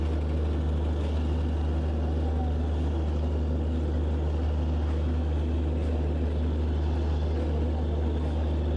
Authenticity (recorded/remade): recorded